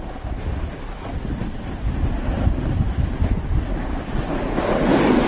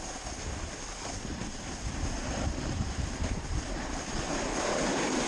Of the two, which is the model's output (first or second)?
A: second